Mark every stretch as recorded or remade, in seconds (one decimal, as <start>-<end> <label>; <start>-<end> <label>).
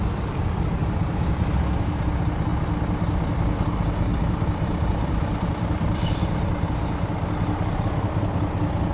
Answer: 0.0-0.8 recorded; 0.8-1.8 remade; 1.8-4.1 recorded; 4.1-7.3 remade; 7.3-8.9 recorded